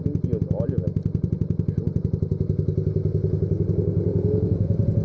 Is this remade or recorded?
recorded